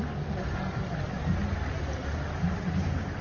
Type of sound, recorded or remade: recorded